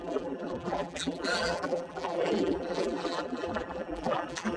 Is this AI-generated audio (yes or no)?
yes